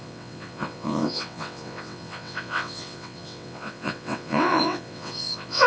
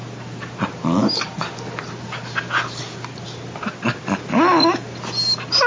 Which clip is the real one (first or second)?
second